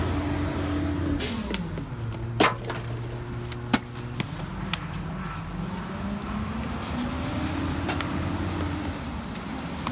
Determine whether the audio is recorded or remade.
recorded